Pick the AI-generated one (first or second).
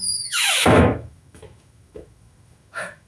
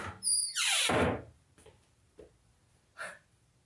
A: first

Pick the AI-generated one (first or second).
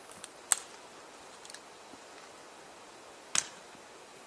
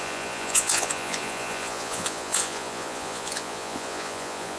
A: second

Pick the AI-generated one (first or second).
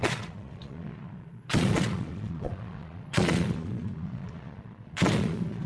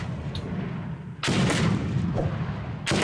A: first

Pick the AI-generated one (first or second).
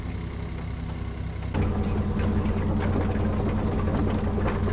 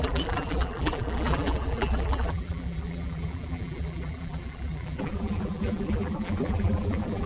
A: second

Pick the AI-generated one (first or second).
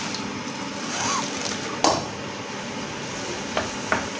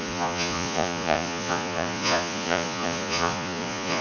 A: second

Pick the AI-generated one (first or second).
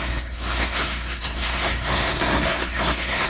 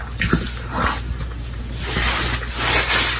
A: first